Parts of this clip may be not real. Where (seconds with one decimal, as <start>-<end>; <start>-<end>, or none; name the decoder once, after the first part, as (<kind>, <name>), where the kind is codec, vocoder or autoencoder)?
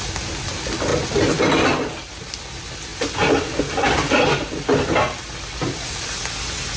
none